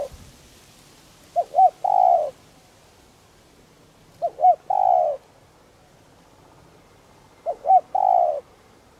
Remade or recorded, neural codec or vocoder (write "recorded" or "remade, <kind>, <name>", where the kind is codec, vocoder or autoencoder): recorded